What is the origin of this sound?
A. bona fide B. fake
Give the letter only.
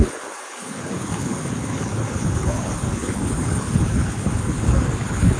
B